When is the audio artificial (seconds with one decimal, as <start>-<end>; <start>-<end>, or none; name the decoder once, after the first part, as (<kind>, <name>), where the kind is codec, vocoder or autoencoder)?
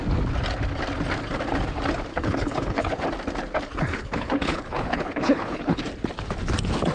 2.1-3.0 (codec, HILCodec); 3.9-5.8